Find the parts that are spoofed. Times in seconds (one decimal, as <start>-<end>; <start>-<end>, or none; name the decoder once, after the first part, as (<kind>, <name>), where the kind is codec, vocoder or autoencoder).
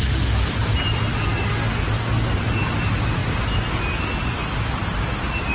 none